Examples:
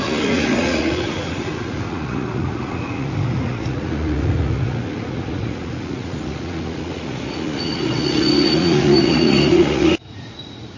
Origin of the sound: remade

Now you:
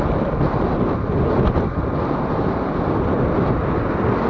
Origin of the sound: recorded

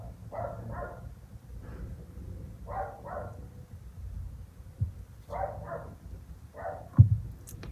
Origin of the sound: recorded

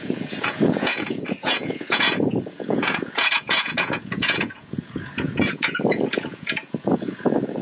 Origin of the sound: remade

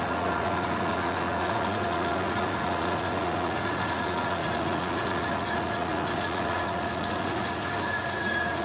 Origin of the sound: remade